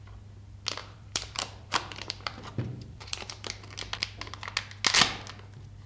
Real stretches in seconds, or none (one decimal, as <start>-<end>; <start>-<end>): 0.0-0.8; 3.5-5.9